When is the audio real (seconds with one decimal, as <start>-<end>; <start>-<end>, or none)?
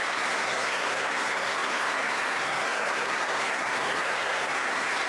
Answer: none